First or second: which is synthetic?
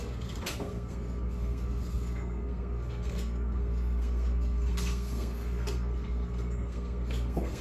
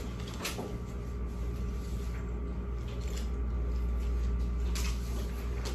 first